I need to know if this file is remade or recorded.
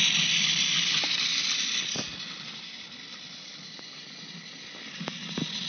recorded